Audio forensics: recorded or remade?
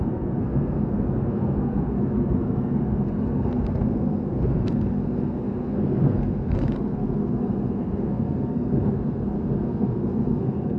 remade